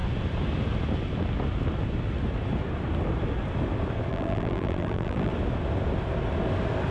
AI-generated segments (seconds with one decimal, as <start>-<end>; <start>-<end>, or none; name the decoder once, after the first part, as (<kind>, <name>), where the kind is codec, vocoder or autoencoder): 4.1-5.3 (vocoder, BigVGAN v2)